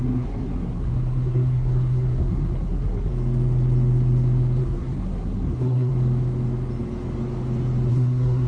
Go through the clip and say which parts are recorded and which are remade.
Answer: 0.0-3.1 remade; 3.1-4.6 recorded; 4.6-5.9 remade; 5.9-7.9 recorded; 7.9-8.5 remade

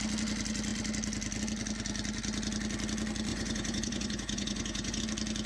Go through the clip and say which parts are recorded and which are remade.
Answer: 0.0-3.3 recorded; 3.3-5.0 remade; 5.0-5.5 recorded

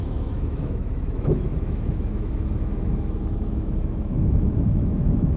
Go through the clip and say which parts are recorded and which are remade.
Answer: 0.0-5.4 remade

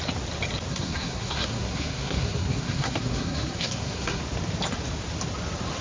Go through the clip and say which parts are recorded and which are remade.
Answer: 0.0-0.7 recorded; 0.7-4.2 remade; 4.2-5.8 recorded

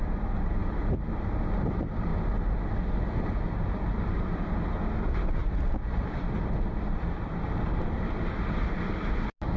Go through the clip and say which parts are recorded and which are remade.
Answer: 0.0-0.6 recorded; 0.6-1.2 remade; 1.2-2.1 recorded; 2.1-2.8 remade; 2.8-5.4 recorded; 5.4-8.7 remade; 8.7-9.6 recorded

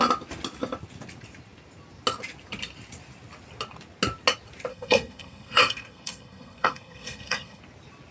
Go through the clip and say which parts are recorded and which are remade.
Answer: 0.0-4.7 recorded; 4.7-7.6 remade; 7.6-8.1 recorded